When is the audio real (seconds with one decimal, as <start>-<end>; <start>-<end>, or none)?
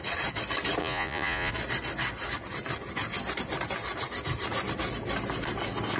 0.0-0.8; 1.5-6.0